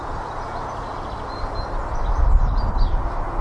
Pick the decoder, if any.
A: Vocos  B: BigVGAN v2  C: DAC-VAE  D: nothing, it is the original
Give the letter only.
D